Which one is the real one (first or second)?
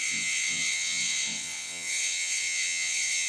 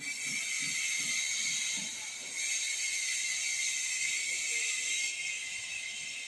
second